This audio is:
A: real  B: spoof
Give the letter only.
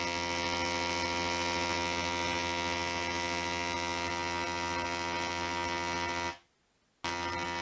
A